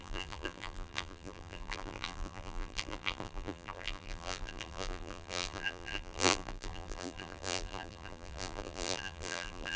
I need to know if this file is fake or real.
fake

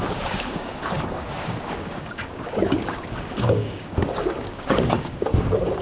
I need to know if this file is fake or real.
fake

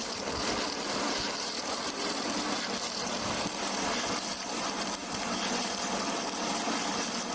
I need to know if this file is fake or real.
real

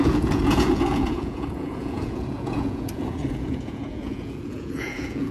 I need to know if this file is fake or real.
fake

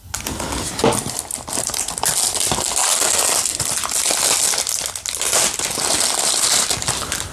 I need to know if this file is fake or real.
real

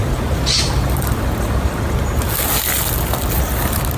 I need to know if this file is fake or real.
real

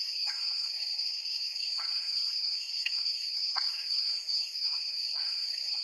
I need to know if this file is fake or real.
fake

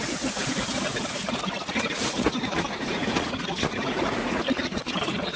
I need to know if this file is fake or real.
fake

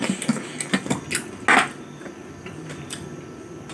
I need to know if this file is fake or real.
real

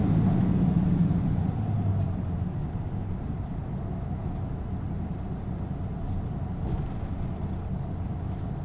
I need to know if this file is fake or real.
real